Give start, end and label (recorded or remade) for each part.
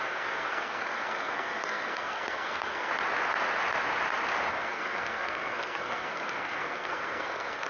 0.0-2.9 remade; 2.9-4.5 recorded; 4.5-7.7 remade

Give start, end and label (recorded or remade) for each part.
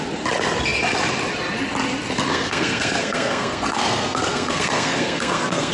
0.0-2.3 recorded; 2.3-5.7 remade